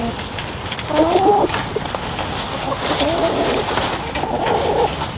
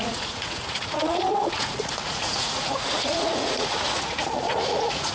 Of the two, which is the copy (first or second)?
second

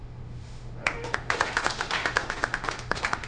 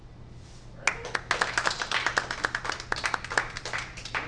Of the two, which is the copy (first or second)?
first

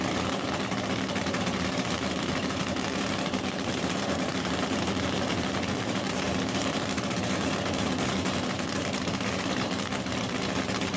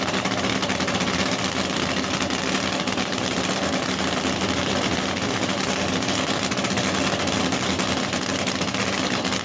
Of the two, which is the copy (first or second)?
first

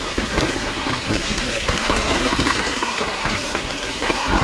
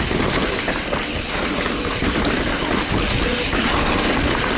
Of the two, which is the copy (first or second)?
first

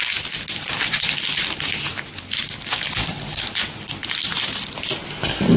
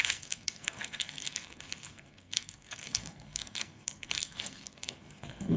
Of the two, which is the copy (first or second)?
second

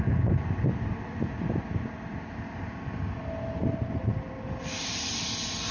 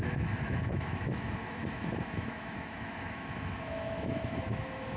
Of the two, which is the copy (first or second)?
second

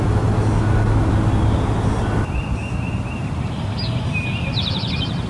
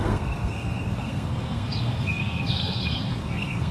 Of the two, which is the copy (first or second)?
second